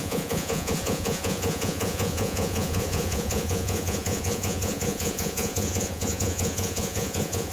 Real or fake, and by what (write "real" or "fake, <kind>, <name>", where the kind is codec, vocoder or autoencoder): fake, vocoder, Vocos